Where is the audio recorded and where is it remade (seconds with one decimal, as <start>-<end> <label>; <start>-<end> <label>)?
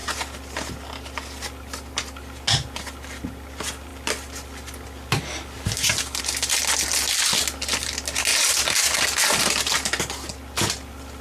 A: 0.0-11.2 recorded